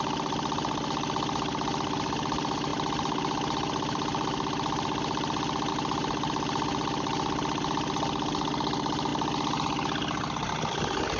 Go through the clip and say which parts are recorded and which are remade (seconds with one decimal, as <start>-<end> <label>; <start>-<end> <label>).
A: 0.0-11.2 recorded